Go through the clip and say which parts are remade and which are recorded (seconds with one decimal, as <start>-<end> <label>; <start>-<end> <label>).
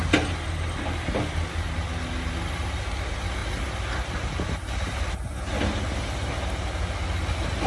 0.0-7.7 recorded